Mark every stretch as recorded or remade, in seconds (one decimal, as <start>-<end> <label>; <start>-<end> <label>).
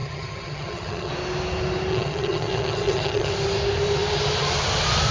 0.0-1.1 remade; 1.1-1.9 recorded; 1.9-3.3 remade; 3.3-5.1 recorded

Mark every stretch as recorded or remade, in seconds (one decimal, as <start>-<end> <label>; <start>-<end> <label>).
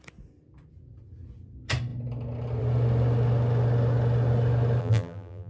0.0-4.8 recorded; 4.8-5.5 remade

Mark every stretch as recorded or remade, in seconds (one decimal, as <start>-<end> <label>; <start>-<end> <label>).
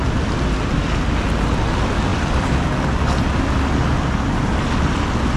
0.0-5.4 recorded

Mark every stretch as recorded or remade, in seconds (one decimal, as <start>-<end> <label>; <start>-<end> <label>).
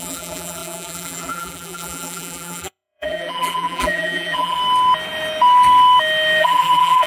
0.0-4.6 remade; 4.6-6.4 recorded; 6.4-7.1 remade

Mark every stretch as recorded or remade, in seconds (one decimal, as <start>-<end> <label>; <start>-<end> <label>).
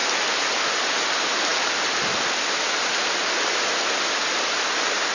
0.0-5.1 recorded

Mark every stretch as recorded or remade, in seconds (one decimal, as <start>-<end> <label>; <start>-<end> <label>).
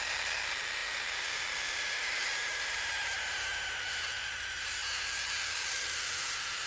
0.0-0.8 recorded; 0.8-4.3 remade; 4.3-6.7 recorded